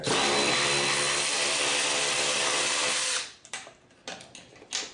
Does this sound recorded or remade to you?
recorded